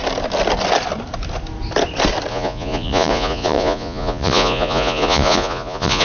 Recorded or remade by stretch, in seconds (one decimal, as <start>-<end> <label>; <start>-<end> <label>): 0.0-2.3 recorded; 2.3-6.0 remade